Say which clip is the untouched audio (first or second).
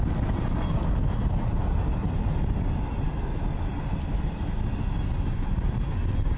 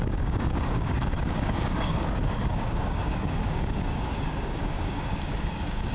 first